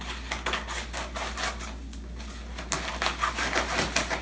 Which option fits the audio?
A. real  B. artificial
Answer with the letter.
A